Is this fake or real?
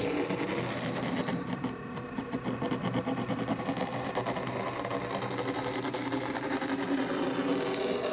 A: real